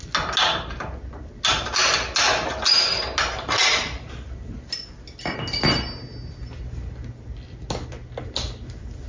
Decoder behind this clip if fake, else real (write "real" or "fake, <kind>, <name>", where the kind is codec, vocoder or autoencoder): real